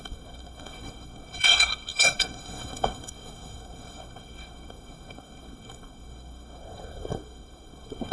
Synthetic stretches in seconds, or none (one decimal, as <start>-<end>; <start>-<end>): 0.0-8.1